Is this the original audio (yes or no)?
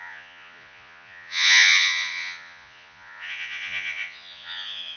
no